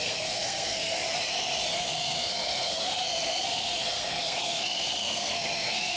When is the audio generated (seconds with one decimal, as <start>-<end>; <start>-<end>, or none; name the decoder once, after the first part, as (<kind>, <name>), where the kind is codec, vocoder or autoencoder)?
0.0-1.0 (codec, SNAC); 1.8-6.0